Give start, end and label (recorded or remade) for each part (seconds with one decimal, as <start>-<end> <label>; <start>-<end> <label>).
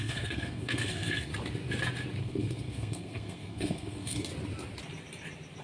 0.0-1.3 remade; 1.3-2.2 recorded; 2.2-4.3 remade; 4.3-5.6 recorded